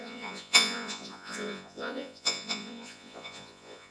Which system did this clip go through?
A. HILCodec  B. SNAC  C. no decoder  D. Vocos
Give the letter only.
D